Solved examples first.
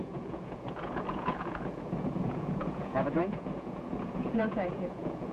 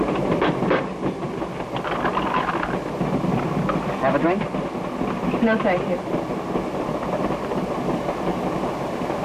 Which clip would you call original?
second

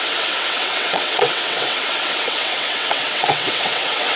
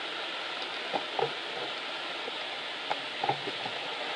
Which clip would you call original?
second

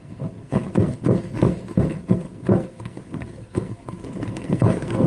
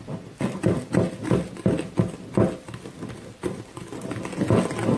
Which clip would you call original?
second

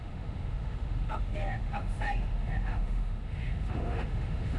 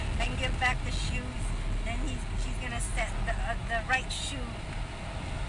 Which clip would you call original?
second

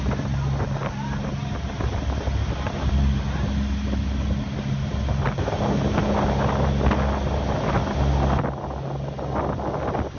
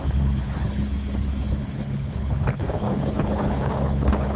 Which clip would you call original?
first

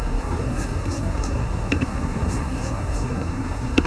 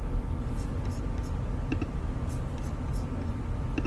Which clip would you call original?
second